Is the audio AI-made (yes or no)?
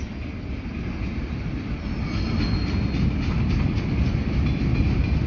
no